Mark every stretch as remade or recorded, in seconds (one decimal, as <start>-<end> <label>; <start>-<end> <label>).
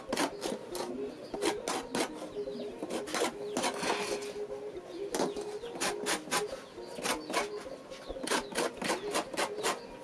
0.0-10.0 recorded